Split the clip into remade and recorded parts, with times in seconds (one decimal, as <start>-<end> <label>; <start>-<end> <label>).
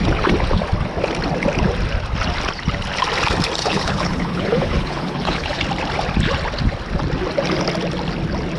0.0-3.6 recorded; 3.6-5.6 remade; 5.6-8.6 recorded